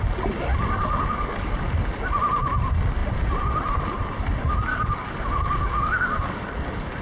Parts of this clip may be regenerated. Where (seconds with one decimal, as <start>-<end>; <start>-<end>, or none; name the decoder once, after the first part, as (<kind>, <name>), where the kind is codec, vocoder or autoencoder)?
0.5-2.0 (codec, DAC); 4.7-6.6